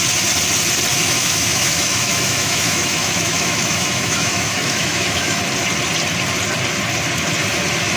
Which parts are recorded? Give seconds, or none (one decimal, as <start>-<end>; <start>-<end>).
0.0-0.9; 5.4-8.0

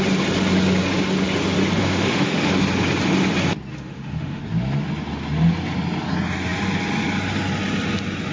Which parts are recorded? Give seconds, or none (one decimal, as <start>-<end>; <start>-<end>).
0.0-1.8; 2.5-3.7; 4.4-8.3